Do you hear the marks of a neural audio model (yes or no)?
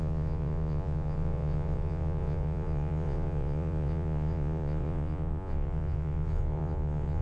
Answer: yes